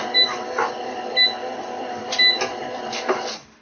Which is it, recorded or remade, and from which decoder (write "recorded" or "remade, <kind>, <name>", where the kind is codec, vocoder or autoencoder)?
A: recorded